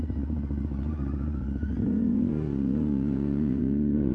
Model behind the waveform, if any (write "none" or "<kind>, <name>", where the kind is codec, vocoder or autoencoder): vocoder, Vocos